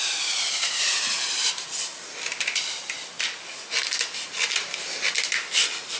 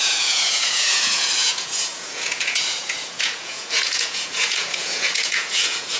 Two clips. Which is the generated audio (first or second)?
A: second